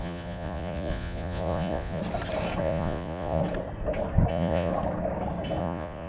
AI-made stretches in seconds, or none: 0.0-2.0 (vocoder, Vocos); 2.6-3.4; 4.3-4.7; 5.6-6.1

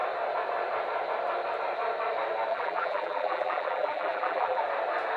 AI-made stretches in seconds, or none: 2.5-4.6 (vocoder, BigVGAN v2)